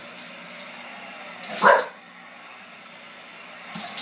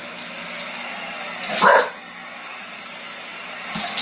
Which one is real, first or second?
second